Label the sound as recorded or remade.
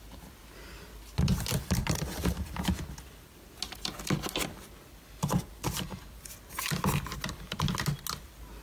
recorded